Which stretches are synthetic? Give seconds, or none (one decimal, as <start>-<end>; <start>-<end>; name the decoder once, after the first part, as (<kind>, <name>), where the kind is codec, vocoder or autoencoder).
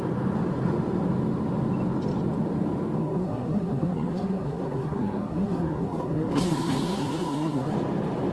3.0-7.7 (codec, SNAC)